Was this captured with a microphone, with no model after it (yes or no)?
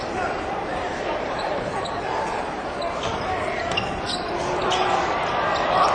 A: no